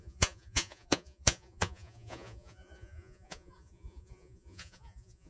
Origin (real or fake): fake